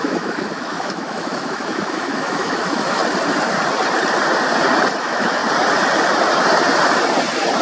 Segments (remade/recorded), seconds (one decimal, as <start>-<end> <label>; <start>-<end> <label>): 0.0-3.0 remade; 3.0-5.0 recorded; 5.0-5.4 remade; 5.4-7.6 recorded